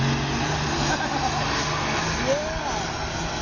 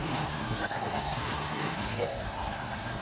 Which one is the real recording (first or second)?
first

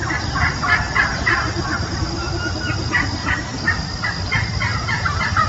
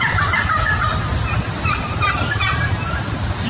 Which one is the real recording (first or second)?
first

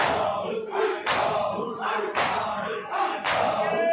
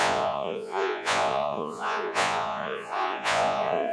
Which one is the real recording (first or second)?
first